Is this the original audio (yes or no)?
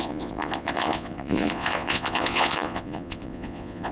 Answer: no